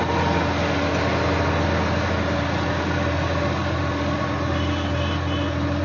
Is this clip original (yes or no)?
yes